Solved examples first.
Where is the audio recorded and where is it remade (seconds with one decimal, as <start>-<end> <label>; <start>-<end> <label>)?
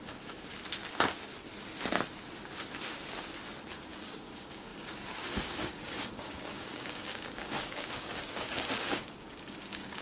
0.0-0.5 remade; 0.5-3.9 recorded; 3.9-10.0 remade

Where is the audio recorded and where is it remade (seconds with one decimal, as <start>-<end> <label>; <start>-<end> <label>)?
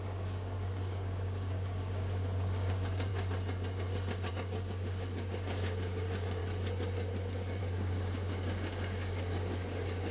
0.0-3.1 remade; 3.1-4.3 recorded; 4.3-6.4 remade; 6.4-7.6 recorded; 7.6-10.1 remade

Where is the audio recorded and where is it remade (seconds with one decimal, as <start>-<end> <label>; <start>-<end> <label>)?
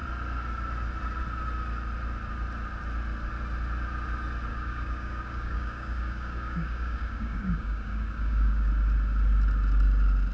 0.0-4.5 recorded; 4.5-8.7 remade; 8.7-10.3 recorded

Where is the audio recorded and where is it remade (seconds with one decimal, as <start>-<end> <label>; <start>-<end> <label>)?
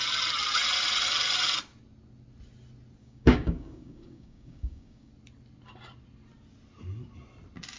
0.0-3.0 recorded; 3.0-5.1 remade; 5.1-7.8 recorded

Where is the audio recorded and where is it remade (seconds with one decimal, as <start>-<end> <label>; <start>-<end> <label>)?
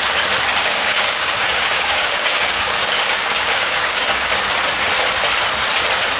0.0-0.6 recorded; 0.6-4.3 remade; 4.3-6.2 recorded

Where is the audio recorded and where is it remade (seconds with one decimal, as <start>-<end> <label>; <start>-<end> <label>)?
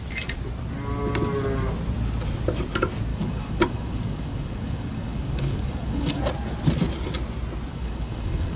0.0-3.1 recorded; 3.1-6.2 remade; 6.2-7.7 recorded; 7.7-8.6 remade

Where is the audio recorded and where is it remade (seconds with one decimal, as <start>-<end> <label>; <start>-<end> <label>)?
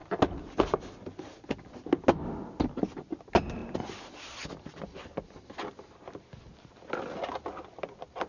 0.0-8.3 recorded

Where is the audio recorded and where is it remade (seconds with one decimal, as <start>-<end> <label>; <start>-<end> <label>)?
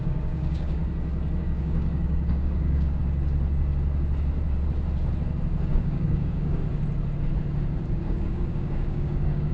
0.0-0.8 remade; 0.8-1.4 recorded; 1.4-3.0 remade; 3.0-5.7 recorded; 5.7-6.6 remade; 6.6-7.9 recorded; 7.9-9.5 remade